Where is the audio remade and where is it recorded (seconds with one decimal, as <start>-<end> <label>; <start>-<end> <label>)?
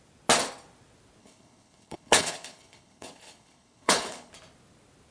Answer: 0.0-1.2 recorded; 1.2-4.3 remade; 4.3-5.1 recorded